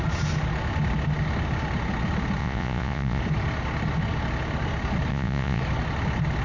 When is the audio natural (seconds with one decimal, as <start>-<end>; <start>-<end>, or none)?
0.0-2.4; 3.2-5.1; 5.6-6.4